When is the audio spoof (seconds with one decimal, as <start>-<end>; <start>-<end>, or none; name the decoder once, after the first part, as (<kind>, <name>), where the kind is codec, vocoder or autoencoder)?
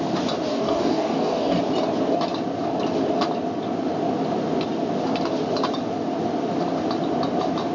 0.5-1.6 (codec, DAC)